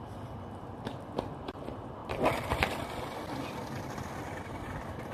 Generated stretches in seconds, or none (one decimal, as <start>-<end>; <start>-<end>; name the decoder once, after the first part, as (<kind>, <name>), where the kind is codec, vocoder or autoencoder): none